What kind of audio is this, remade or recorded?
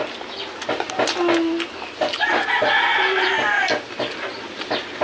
recorded